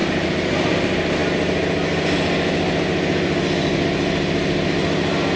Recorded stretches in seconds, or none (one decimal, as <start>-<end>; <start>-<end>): 0.0-5.4